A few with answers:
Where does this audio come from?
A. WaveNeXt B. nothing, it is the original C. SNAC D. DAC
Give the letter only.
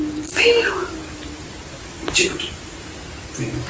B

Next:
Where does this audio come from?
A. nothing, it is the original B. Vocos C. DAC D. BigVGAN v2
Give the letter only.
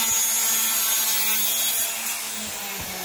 A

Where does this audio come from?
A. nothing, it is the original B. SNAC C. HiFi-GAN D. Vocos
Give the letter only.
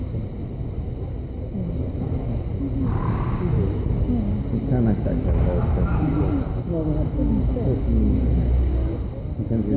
A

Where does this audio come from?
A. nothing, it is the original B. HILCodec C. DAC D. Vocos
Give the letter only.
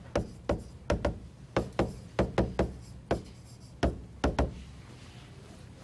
A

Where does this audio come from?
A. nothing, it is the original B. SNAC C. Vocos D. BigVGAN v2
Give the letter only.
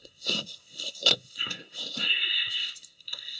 B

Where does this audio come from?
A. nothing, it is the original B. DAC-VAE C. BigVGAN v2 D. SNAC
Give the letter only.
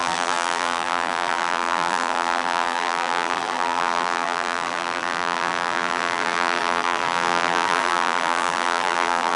C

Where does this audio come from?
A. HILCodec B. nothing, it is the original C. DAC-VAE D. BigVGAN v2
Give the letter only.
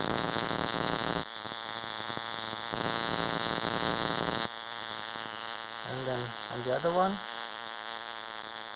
C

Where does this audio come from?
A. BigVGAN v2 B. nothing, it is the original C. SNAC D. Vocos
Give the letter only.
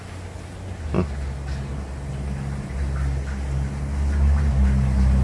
B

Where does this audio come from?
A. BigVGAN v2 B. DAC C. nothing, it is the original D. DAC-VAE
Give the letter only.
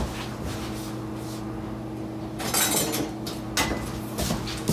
C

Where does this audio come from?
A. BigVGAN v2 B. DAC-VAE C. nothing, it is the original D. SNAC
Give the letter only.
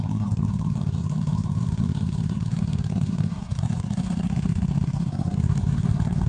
D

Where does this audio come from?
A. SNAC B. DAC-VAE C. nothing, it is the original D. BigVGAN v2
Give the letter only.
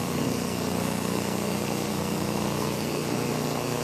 A